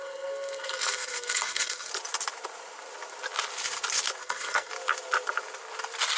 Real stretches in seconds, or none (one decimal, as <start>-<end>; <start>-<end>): 1.9-4.2; 4.7-6.2